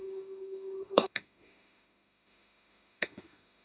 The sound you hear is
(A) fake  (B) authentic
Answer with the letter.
A